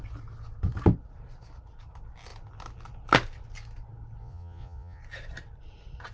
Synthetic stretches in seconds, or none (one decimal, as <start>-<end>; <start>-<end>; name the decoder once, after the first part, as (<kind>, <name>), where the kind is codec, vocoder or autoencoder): 4.2-5.0 (vocoder, Vocos)

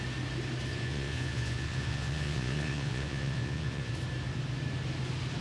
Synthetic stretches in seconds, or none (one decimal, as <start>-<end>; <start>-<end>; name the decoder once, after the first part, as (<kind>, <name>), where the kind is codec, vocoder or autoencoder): 0.7-3.9 (vocoder, Vocos)

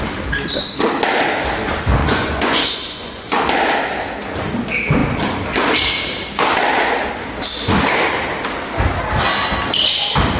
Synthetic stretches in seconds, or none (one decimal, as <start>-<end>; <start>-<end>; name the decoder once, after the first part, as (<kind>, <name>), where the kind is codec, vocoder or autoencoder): 2.0-3.4 (vocoder, Vocos)

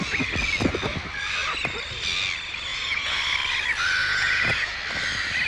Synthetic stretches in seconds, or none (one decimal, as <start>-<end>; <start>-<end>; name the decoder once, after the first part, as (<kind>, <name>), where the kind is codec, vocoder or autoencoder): 2.7-3.2 (vocoder, Vocos); 4.0-4.8

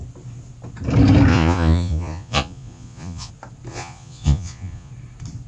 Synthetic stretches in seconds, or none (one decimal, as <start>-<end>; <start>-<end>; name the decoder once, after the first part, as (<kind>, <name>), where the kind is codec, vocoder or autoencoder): 1.3-3.3 (vocoder, Vocos); 3.7-4.9

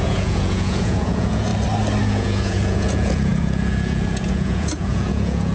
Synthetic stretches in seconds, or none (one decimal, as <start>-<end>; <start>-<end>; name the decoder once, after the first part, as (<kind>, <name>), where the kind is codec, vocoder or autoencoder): 0.0-1.5 (vocoder, Vocos); 2.0-5.5